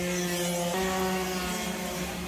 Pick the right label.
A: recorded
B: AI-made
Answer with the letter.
A